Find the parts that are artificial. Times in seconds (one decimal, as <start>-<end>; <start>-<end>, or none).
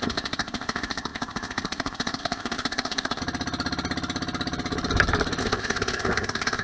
0.0-3.2; 5.4-6.6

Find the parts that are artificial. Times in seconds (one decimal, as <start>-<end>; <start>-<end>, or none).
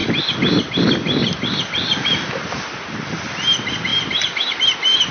none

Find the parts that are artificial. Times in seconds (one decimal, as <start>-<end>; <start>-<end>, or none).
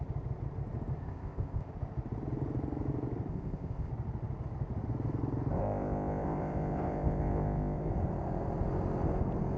1.0-1.7; 3.3-3.9; 5.6-7.9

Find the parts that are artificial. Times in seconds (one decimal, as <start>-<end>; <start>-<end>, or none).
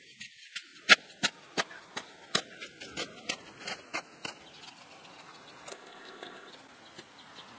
5.7-6.5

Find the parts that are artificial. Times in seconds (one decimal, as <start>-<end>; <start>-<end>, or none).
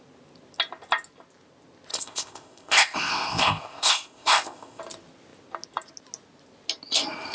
1.9-4.8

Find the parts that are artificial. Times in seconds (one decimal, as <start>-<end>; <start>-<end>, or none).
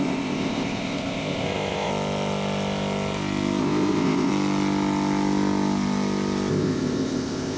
0.0-1.9; 3.6-4.3; 6.5-7.6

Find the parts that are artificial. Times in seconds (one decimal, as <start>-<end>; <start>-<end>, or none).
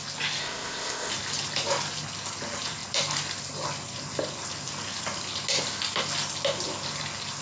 0.4-1.1